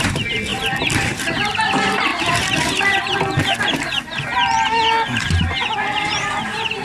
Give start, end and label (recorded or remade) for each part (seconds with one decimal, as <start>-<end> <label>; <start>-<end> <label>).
0.0-6.8 recorded